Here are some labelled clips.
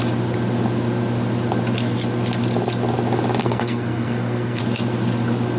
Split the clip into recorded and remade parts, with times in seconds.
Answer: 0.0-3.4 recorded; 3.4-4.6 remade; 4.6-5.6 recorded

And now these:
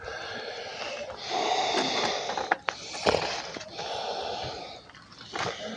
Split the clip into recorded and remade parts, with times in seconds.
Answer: 0.0-5.8 recorded

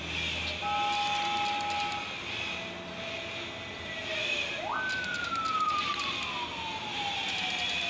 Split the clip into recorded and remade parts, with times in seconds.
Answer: 0.0-7.9 recorded

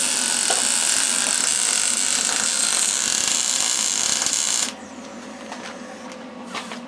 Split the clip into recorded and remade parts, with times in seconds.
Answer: 0.0-6.9 recorded

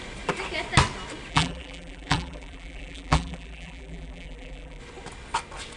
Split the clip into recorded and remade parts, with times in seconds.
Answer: 0.0-1.3 recorded; 1.3-4.8 remade; 4.8-5.8 recorded

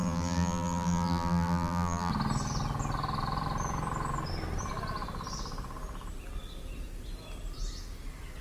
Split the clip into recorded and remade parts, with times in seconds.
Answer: 0.0-2.1 remade; 2.1-8.4 recorded